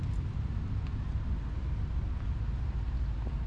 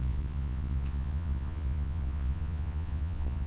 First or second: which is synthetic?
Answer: second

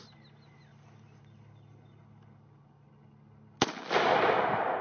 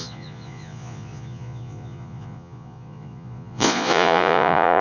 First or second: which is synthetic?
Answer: second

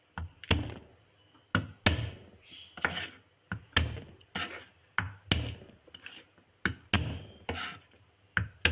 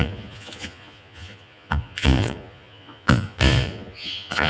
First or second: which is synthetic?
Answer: second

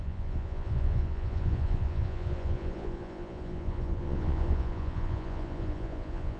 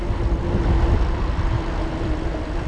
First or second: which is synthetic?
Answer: first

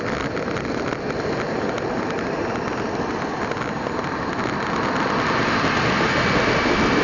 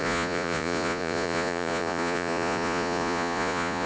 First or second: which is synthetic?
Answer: second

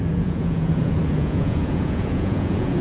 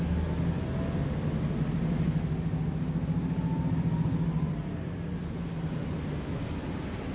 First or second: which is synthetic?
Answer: first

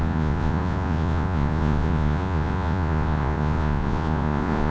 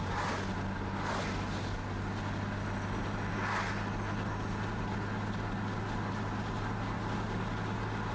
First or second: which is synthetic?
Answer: first